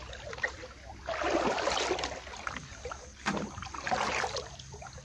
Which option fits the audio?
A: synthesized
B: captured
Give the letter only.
B